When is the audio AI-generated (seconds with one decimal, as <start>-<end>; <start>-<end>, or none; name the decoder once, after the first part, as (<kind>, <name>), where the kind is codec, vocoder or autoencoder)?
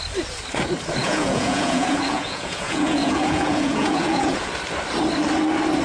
1.0-4.5 (vocoder, Vocos)